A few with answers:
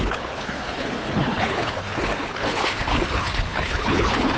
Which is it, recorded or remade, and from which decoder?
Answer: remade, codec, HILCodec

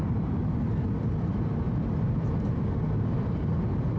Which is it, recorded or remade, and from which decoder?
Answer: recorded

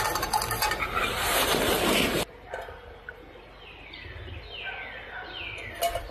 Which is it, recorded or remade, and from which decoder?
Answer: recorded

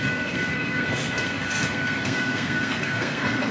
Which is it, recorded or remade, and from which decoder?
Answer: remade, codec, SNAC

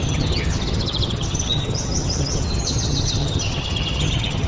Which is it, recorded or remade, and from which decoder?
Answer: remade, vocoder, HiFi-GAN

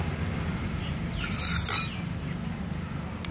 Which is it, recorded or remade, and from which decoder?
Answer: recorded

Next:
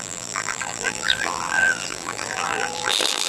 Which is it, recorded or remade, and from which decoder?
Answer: remade, vocoder, BigVGAN v2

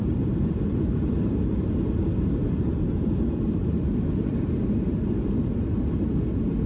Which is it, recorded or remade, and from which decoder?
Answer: remade, vocoder, BigVGAN v2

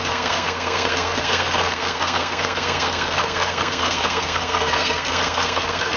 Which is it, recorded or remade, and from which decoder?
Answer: remade, codec, SNAC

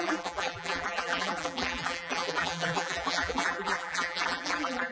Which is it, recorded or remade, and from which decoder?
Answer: remade, vocoder, BigVGAN v2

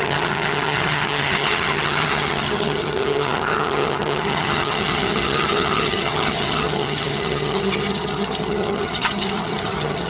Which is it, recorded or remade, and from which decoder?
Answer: remade, vocoder, HiFi-GAN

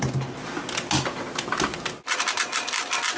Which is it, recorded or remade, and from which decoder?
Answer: recorded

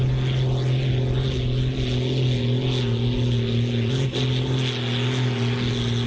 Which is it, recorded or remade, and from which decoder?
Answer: recorded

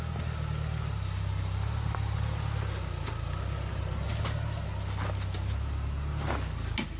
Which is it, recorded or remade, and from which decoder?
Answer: recorded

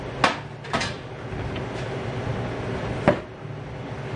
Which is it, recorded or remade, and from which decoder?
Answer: recorded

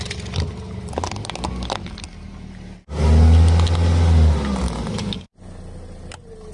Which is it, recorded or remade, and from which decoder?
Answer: recorded